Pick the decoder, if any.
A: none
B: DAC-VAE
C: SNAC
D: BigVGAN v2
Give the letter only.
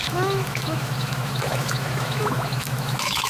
B